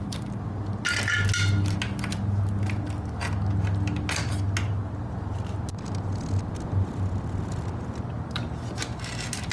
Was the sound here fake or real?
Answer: real